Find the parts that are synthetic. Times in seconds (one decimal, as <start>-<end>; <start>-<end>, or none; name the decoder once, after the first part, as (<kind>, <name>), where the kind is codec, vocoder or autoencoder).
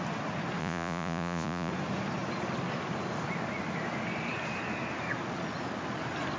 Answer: 0.6-1.7 (vocoder, Vocos)